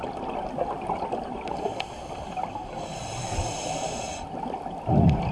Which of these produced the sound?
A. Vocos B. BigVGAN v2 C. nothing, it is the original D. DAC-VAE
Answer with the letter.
C